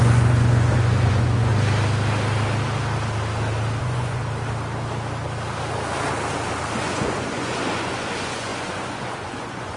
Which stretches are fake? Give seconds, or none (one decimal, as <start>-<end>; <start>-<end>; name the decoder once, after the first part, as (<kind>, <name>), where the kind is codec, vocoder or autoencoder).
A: 0.0-1.5 (vocoder, Vocos); 3.8-4.2; 6.8-9.8